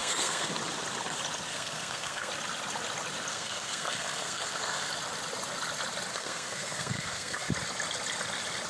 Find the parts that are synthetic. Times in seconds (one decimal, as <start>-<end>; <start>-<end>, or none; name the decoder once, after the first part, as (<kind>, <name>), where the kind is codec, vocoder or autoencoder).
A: 0.0-0.5 (codec, SNAC); 1.5-2.3; 3.3-4.9; 6.1-7.5